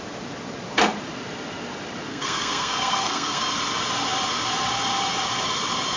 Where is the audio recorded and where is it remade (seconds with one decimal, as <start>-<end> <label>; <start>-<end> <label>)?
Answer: 0.0-2.1 recorded; 2.1-3.5 remade; 3.5-6.0 recorded